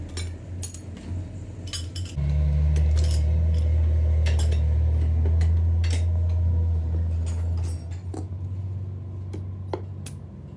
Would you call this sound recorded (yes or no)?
yes